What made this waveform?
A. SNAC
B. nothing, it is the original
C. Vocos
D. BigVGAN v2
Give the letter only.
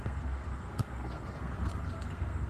A